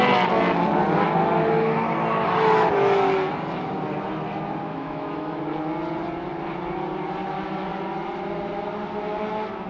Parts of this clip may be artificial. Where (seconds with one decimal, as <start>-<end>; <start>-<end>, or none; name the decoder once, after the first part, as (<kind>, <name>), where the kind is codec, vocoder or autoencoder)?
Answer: 4.7-5.4 (autoencoder, DAC-VAE)